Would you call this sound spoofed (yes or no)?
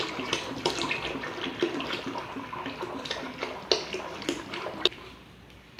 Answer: no